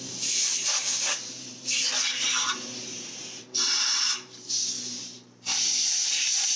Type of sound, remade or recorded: remade